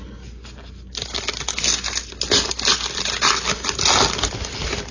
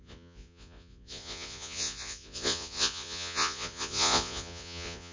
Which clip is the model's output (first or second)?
second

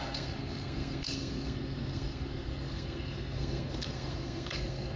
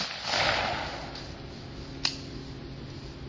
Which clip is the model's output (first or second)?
first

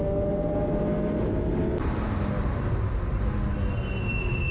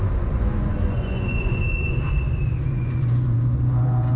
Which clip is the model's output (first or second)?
second